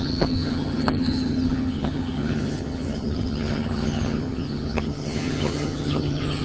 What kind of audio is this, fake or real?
fake